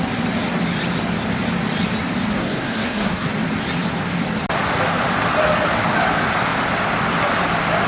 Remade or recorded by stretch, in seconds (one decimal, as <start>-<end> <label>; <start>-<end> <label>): 0.0-2.3 recorded; 2.3-3.3 remade; 3.3-7.9 recorded